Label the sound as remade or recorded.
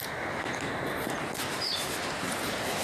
recorded